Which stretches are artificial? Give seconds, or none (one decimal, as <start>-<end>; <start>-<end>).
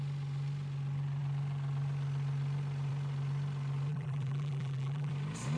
3.9-5.1